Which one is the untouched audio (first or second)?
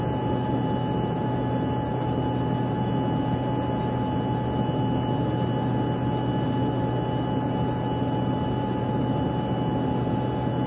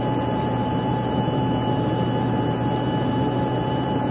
first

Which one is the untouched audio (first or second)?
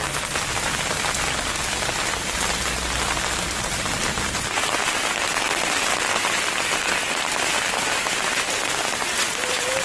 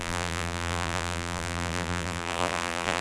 first